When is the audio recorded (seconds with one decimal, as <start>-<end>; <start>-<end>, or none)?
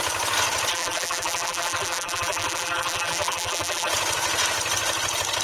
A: 0.0-0.7; 3.9-5.4